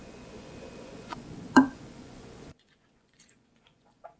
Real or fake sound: fake